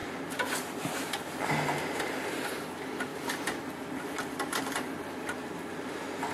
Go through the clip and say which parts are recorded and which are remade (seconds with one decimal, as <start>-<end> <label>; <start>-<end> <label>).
0.0-1.5 remade; 1.5-3.1 recorded; 3.1-4.6 remade; 4.6-6.3 recorded

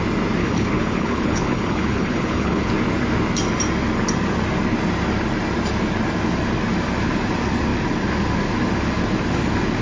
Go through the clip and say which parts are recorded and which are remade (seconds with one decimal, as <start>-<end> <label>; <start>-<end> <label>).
0.0-0.4 recorded; 0.4-2.7 remade; 2.7-9.8 recorded